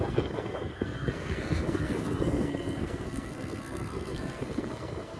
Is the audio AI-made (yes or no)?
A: yes